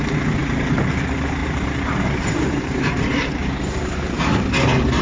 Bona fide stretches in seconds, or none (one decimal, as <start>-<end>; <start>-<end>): 0.0-1.4; 4.4-5.0